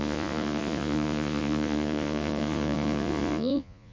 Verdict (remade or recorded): remade